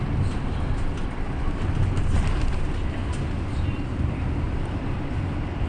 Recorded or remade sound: recorded